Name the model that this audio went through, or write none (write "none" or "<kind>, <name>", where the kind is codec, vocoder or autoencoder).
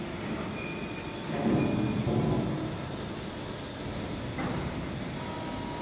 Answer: none